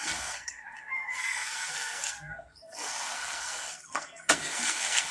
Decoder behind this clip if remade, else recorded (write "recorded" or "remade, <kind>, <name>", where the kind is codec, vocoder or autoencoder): remade, codec, SNAC